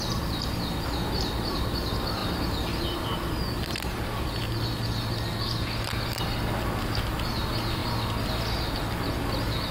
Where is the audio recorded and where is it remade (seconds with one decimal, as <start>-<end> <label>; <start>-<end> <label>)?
0.0-9.7 recorded